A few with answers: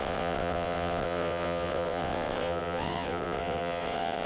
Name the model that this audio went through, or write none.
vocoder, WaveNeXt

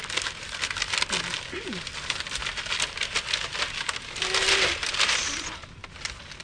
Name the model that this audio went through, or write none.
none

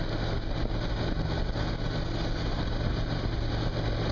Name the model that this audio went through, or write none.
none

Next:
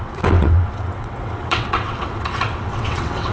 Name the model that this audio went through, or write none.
vocoder, WaveNeXt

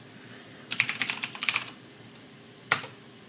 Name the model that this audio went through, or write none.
none